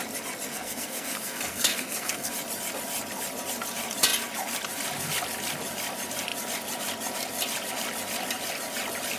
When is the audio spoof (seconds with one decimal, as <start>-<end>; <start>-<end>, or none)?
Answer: 0.5-2.3